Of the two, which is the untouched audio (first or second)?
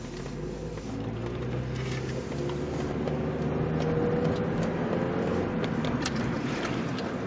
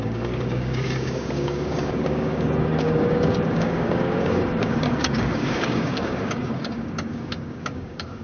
first